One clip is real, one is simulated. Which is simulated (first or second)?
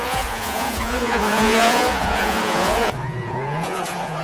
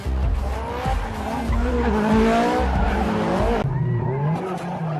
first